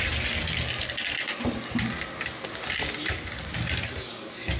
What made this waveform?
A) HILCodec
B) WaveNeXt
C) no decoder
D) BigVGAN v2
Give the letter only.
C